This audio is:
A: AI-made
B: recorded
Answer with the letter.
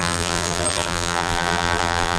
A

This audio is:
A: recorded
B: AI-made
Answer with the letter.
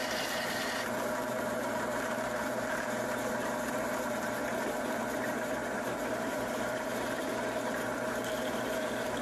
B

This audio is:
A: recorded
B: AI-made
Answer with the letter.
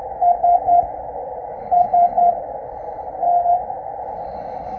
B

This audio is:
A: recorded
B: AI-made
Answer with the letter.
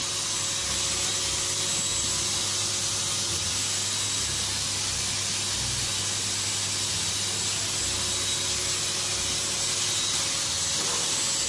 A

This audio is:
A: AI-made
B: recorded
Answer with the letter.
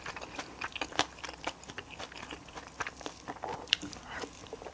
A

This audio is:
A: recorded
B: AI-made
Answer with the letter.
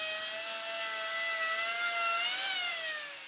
A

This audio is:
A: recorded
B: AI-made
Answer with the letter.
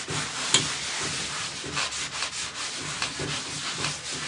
A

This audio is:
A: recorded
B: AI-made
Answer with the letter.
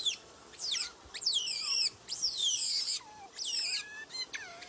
B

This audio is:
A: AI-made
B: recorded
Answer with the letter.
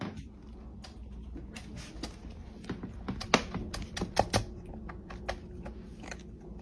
B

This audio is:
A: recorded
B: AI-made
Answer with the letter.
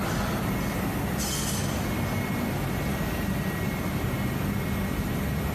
A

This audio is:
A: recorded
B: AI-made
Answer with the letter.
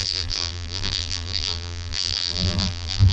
B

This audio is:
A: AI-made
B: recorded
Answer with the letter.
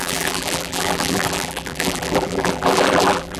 A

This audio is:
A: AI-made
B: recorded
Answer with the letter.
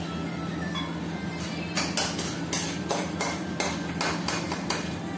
B